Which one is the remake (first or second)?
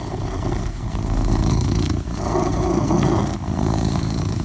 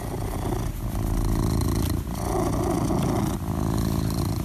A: first